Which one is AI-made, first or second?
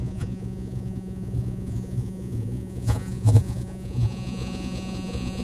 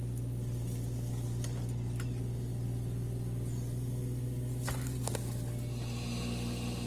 first